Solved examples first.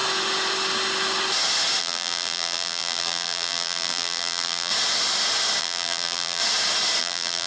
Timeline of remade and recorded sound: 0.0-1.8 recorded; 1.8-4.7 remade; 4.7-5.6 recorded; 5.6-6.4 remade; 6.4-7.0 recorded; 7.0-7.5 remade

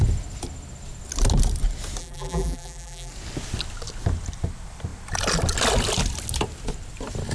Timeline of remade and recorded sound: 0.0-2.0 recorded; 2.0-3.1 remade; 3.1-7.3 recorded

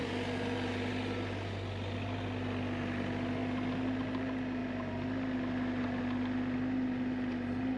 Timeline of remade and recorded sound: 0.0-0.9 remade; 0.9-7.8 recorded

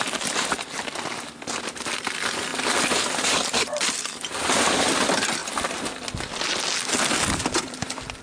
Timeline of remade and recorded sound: 0.0-2.5 remade; 2.5-3.1 recorded; 3.1-5.4 remade; 5.4-7.1 recorded; 7.1-8.2 remade

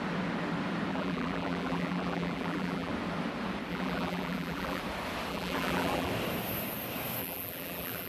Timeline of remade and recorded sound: 0.0-0.9 recorded; 0.9-2.9 remade; 2.9-3.7 recorded; 3.7-4.8 remade; 4.8-5.3 recorded; 5.3-6.1 remade; 6.1-7.2 recorded; 7.2-8.1 remade

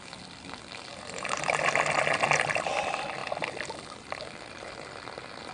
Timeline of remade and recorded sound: 0.0-0.9 recorded; 0.9-1.6 remade; 1.6-5.5 recorded